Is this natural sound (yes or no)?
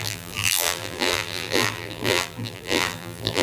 no